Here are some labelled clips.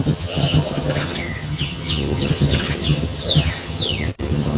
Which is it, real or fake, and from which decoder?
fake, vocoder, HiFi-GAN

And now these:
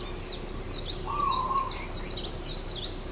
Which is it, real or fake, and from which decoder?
real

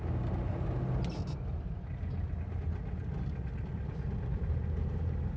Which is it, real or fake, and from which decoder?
real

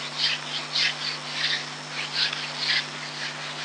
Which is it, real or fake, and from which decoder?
real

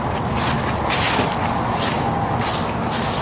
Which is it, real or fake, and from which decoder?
real